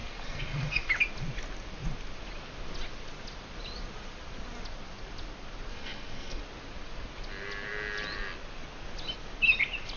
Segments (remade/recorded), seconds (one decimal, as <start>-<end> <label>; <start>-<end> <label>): 0.0-0.9 remade; 0.9-5.7 recorded; 5.7-6.4 remade; 6.4-10.0 recorded